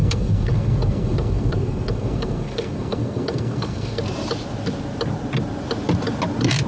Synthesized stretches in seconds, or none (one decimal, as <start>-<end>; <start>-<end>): 0.0-4.0